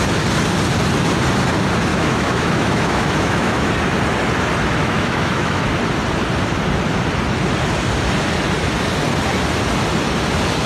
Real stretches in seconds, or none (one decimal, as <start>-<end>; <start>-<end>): 0.0-1.9; 3.7-4.8; 5.6-10.7